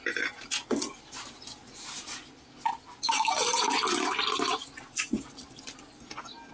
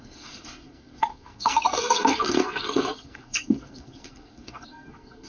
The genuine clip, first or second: first